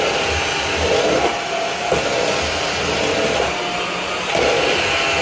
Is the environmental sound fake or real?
real